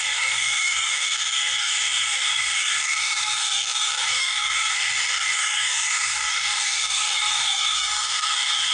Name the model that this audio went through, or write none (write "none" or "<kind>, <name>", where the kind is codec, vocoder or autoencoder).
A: codec, DAC